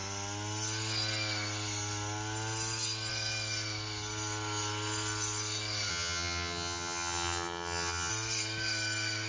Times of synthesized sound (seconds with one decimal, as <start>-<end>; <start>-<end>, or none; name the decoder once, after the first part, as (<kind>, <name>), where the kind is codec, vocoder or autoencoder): 5.9-8.1 (vocoder, HiFi-GAN)